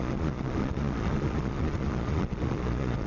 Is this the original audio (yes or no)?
no